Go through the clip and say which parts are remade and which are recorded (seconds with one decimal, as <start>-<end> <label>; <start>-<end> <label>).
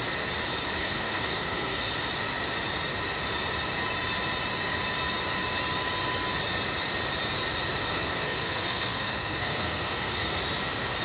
0.0-0.8 recorded; 0.8-1.9 remade; 1.9-7.9 recorded; 7.9-10.4 remade; 10.4-11.0 recorded